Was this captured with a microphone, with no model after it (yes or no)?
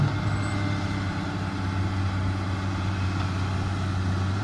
yes